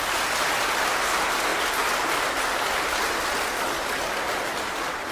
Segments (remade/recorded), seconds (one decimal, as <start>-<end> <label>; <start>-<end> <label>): 0.0-5.1 recorded